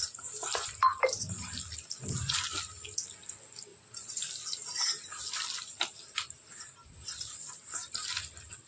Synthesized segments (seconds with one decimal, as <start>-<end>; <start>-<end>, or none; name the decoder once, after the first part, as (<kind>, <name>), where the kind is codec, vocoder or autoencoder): none